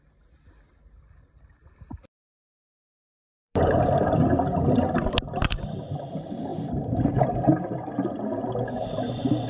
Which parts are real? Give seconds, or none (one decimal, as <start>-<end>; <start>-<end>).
0.0-3.4; 4.2-9.5